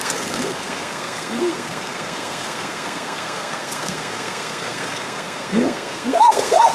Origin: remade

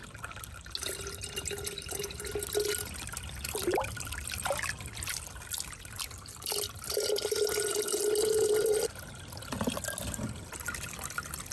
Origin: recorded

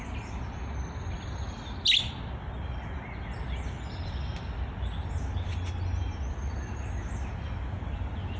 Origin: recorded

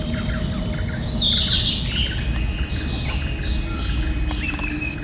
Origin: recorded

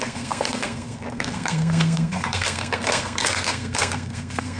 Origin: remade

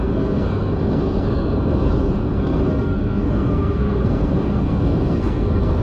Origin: remade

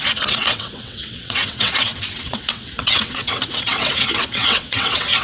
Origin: remade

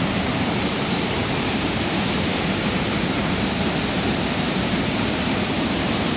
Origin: remade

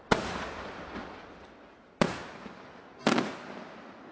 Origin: recorded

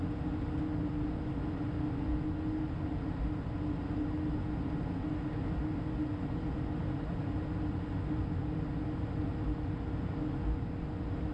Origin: recorded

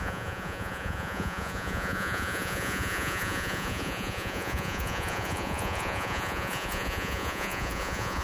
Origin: remade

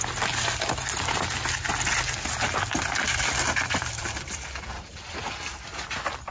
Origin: recorded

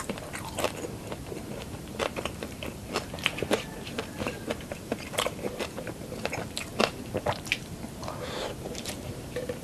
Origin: remade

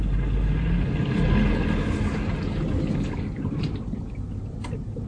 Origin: recorded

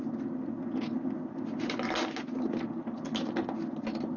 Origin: recorded